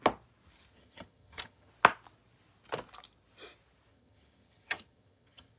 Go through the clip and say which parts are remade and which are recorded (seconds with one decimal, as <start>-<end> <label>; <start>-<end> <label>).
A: 0.0-0.7 recorded; 0.7-1.7 remade; 1.7-3.9 recorded; 3.9-5.6 remade